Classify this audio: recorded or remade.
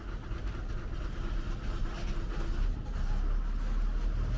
recorded